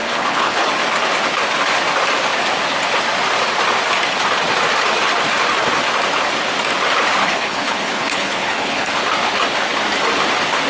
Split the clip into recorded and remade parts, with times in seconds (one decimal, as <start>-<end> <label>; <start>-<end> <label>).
0.0-0.7 remade; 0.7-7.2 recorded; 7.2-8.9 remade; 8.9-10.7 recorded